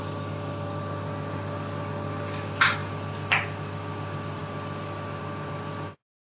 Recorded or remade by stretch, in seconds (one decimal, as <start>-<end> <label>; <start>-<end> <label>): 0.0-6.3 recorded